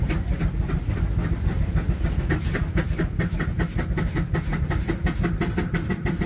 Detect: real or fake real